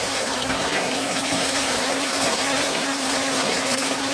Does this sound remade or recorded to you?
remade